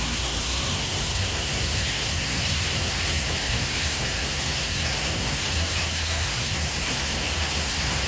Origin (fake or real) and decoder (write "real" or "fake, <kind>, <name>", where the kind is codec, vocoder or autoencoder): fake, codec, SNAC